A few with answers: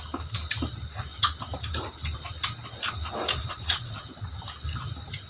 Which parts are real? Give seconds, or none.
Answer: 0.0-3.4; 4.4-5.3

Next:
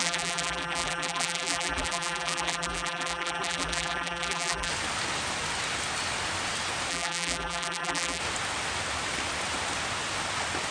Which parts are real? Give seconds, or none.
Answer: 4.7-6.9; 8.2-10.7

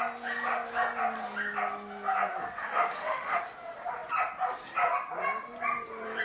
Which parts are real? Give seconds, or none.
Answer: 0.0-2.4; 3.4-6.2